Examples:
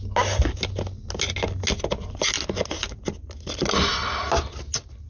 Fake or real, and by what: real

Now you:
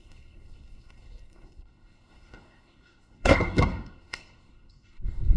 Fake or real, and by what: fake, codec, SNAC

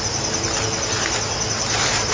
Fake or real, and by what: real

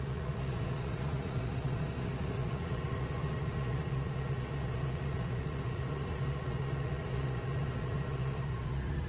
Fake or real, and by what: fake, vocoder, Vocos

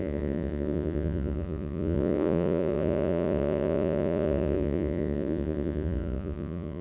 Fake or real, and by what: fake, vocoder, Vocos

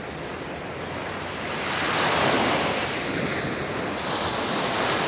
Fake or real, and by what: real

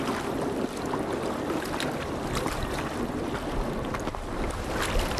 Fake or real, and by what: real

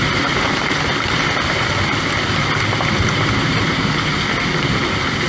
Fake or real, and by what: real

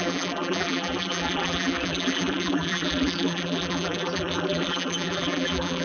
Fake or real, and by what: fake, vocoder, BigVGAN v2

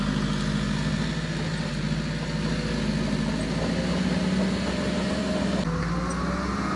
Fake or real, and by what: real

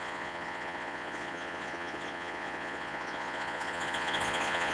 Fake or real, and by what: fake, vocoder, Vocos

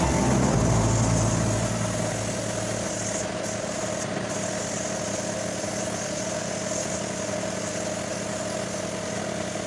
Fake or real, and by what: real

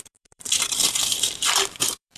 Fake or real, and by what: fake, vocoder, BigVGAN v2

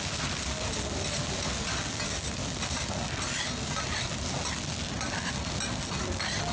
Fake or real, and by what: real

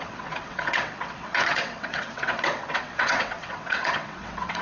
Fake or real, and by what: fake, vocoder, WaveNeXt